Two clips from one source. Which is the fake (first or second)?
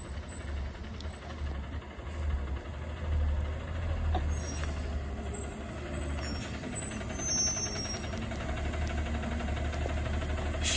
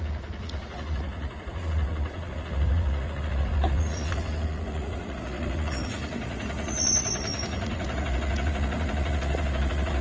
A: second